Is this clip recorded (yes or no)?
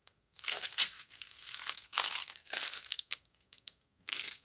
no